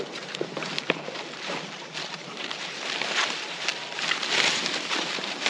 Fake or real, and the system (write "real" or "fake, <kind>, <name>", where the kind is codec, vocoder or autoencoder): fake, vocoder, BigVGAN v2